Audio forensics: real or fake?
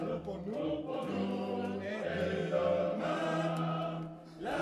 real